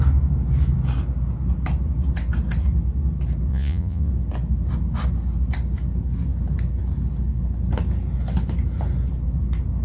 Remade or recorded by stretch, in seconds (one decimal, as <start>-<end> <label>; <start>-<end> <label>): 0.0-3.5 recorded; 3.5-4.1 remade; 4.1-9.8 recorded